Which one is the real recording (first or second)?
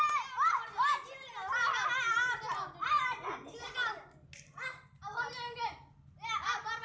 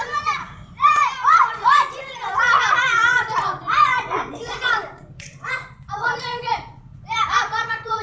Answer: first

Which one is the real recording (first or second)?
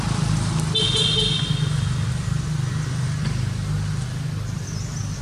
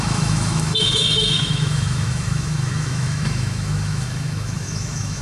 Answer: first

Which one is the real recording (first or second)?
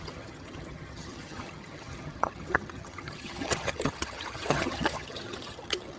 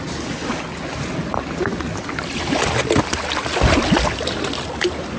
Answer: second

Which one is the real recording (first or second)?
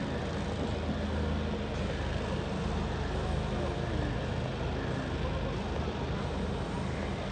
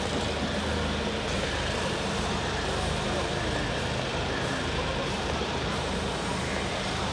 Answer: first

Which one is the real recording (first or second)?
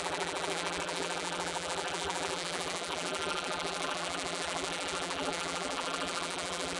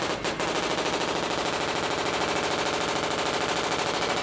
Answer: second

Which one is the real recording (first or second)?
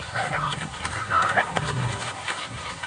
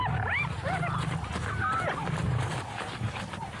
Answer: second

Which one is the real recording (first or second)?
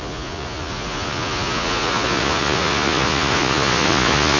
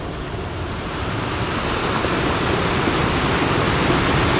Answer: second